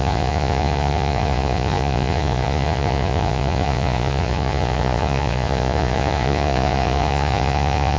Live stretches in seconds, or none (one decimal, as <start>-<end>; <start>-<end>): none